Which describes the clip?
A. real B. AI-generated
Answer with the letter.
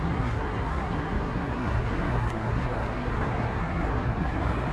B